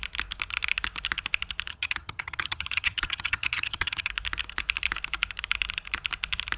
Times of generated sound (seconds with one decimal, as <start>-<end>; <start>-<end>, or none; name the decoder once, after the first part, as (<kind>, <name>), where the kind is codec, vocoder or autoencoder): 1.7-4.1 (vocoder, HiFi-GAN)